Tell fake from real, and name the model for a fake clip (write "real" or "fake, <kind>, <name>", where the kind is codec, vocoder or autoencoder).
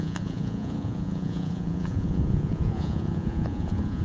fake, vocoder, Vocos